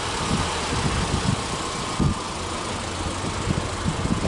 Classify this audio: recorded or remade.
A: recorded